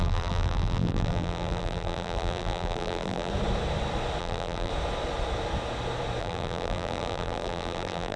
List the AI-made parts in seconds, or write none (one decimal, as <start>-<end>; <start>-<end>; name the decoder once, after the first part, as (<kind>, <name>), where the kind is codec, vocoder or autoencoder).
0.0-3.3 (vocoder, BigVGAN v2); 4.2-4.7; 6.2-8.2